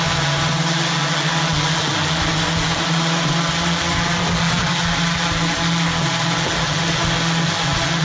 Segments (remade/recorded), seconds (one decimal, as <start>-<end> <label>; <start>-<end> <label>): 0.0-8.0 recorded